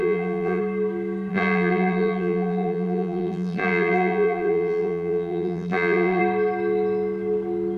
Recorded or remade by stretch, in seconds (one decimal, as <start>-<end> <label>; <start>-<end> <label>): 0.0-0.6 remade; 0.6-1.3 recorded; 1.3-6.2 remade; 6.2-7.8 recorded